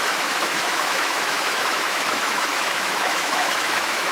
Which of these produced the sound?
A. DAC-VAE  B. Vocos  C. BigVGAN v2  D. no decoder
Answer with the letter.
A